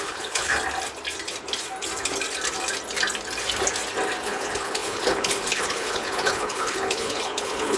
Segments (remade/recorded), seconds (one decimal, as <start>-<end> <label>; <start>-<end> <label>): 0.0-0.5 remade; 0.5-4.2 recorded; 4.2-7.8 remade